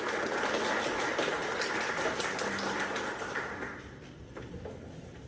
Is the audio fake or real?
real